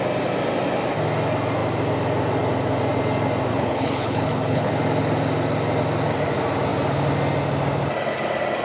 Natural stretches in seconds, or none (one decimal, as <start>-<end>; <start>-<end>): 0.0-3.5; 4.7-8.6